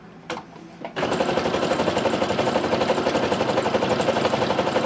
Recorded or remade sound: recorded